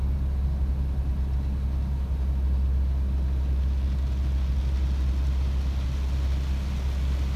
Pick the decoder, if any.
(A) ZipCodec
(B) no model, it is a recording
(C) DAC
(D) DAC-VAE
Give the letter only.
B